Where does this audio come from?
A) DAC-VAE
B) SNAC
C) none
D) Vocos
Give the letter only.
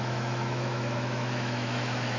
A